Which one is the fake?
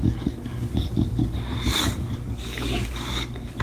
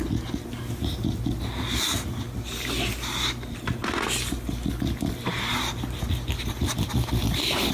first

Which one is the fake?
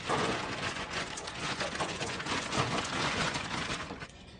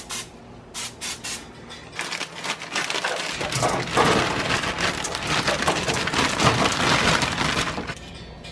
first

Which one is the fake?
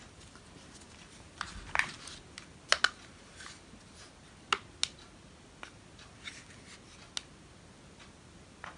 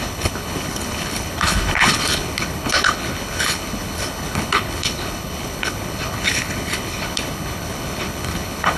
second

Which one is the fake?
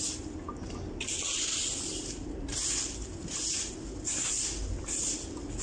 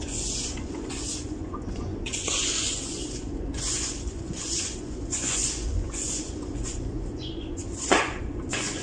second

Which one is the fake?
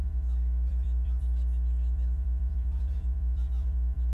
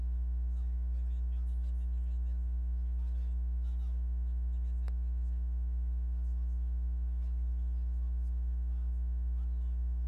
first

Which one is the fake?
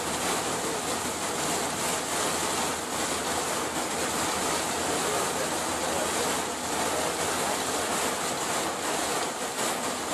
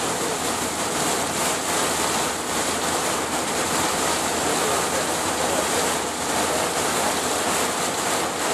second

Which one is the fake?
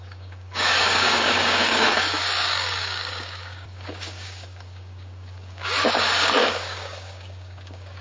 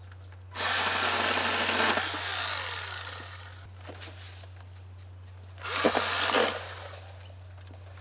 first